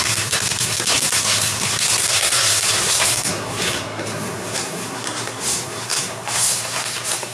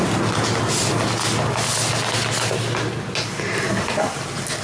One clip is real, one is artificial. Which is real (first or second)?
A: second